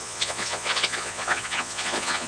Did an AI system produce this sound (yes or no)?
yes